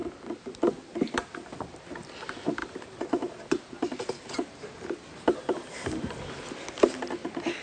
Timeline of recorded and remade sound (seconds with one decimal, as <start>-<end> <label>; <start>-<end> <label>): 0.0-7.6 recorded